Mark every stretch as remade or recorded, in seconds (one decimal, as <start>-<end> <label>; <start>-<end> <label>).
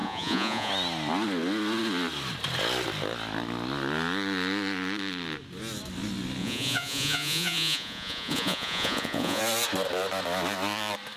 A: 0.0-0.7 remade; 0.7-6.4 recorded; 6.4-9.4 remade; 9.4-11.2 recorded